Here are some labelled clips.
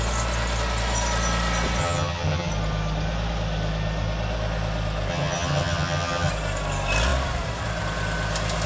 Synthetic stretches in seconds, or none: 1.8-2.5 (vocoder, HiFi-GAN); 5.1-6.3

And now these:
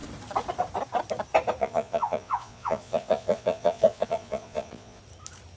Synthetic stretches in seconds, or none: 1.6-5.0 (vocoder, Vocos)

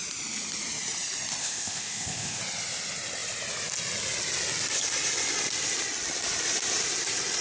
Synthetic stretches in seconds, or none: 1.4-2.4 (codec, ZipCodec)